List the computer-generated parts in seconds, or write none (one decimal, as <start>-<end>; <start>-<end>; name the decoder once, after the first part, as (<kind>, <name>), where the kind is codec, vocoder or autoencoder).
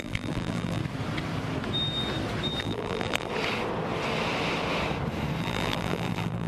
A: 0.0-0.8 (vocoder, BigVGAN v2); 2.6-3.3; 5.4-6.5